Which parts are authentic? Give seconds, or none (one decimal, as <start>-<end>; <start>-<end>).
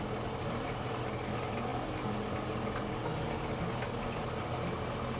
0.0-5.2